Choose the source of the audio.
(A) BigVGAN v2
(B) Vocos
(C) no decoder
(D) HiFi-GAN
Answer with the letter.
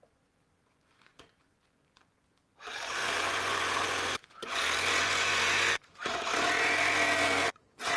B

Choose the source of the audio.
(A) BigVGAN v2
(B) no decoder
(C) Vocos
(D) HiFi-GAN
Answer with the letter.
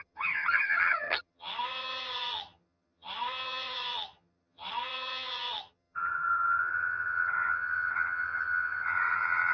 D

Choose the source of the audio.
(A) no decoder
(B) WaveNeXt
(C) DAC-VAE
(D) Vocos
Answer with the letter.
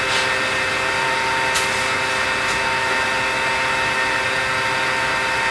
A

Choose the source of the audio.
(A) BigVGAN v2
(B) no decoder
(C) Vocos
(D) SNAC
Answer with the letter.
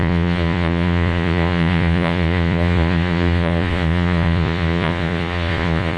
C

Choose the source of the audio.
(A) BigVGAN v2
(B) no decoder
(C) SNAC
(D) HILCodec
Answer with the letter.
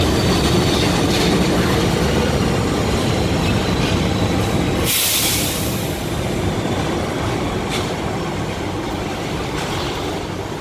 A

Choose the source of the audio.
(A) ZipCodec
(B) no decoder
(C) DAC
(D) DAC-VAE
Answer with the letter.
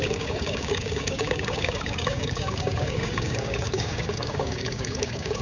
C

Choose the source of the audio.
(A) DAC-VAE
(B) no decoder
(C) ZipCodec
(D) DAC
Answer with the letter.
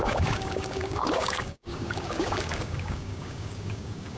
D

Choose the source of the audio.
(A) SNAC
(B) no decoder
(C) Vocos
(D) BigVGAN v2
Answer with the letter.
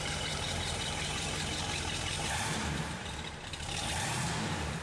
D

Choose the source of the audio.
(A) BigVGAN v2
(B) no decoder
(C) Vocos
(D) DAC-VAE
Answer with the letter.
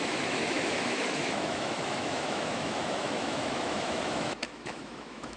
D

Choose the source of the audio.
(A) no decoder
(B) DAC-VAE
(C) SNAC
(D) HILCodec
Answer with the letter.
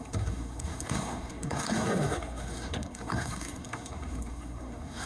C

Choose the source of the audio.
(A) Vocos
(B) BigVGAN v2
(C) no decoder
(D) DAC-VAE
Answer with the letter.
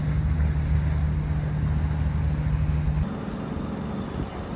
C